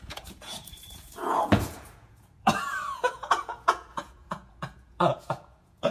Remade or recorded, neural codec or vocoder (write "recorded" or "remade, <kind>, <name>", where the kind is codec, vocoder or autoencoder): remade, vocoder, Vocos